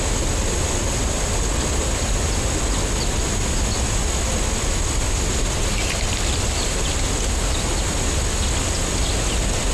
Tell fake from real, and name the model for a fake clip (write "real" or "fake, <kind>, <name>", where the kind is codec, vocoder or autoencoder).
real